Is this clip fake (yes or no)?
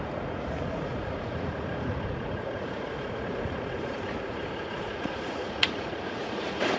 yes